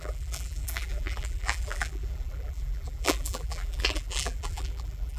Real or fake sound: fake